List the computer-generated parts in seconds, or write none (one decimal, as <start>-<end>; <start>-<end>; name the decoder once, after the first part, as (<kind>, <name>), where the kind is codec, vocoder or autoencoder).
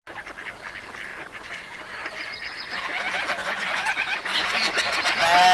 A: 1.1-2.8 (vocoder, Vocos); 3.4-5.0